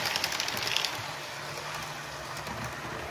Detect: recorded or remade recorded